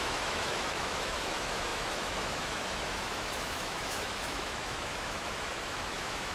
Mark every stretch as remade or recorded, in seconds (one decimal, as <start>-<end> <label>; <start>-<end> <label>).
0.0-6.3 remade